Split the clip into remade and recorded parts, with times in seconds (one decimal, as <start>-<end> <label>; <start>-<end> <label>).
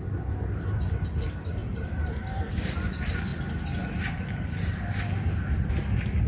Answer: 0.0-1.6 recorded; 1.6-2.5 remade; 2.5-6.3 recorded